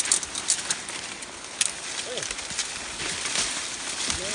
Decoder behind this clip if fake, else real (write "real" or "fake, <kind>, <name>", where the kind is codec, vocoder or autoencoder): real